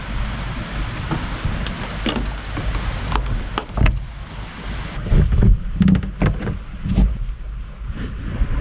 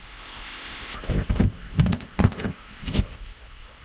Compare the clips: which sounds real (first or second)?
first